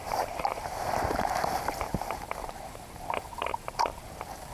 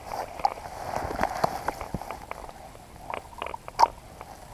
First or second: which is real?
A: second